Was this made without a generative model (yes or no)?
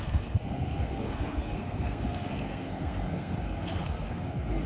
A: no